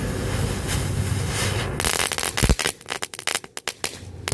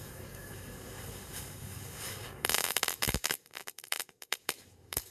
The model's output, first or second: second